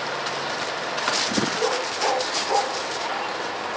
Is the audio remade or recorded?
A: recorded